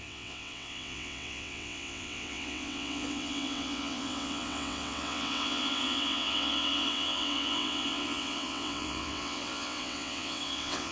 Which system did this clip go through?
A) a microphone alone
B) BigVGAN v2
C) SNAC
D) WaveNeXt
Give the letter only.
D